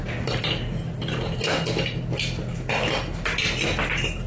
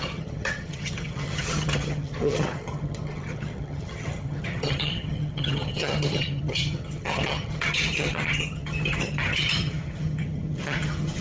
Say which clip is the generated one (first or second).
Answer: second